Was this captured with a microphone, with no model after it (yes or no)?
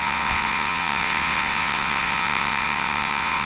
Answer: no